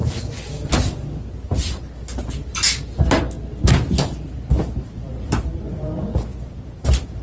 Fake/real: real